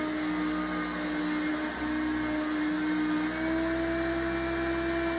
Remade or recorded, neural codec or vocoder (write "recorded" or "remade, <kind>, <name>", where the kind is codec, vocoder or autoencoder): recorded